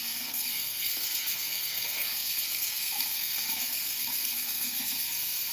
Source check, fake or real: fake